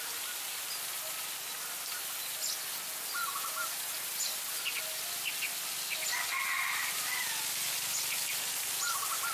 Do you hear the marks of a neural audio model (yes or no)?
no